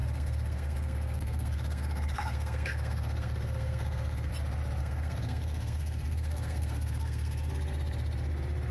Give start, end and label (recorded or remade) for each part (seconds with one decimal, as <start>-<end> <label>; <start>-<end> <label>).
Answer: 0.0-4.3 remade; 4.3-4.8 recorded; 4.8-7.5 remade; 7.5-8.7 recorded